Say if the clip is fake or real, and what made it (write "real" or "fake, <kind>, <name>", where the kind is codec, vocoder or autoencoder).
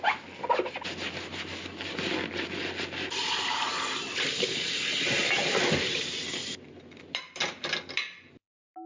real